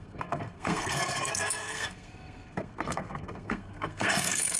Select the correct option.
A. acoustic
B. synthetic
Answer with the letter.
B